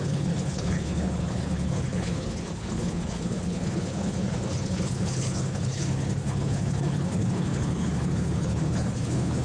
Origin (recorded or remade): remade